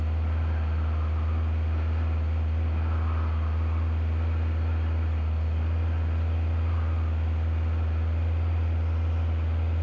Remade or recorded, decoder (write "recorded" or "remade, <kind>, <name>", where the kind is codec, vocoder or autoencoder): recorded